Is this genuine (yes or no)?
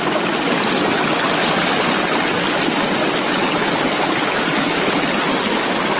yes